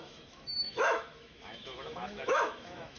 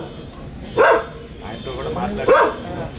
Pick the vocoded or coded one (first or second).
first